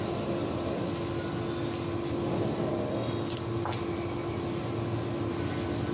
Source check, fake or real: real